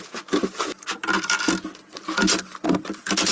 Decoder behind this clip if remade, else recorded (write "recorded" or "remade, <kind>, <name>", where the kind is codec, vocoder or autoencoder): recorded